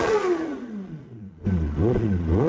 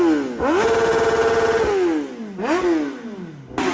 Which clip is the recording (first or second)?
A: second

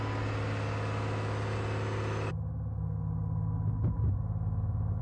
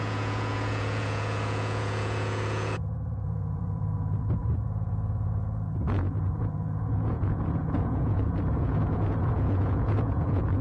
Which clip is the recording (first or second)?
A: first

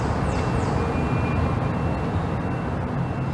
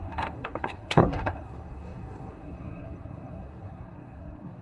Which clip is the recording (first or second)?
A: first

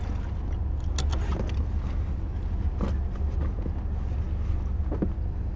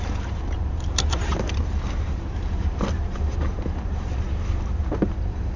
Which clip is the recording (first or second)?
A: first